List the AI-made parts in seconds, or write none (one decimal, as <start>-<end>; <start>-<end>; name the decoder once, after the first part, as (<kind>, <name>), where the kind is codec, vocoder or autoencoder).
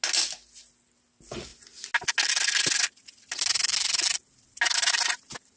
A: none